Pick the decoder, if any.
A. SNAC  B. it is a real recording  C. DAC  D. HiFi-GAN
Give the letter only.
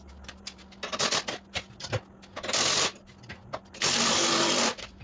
B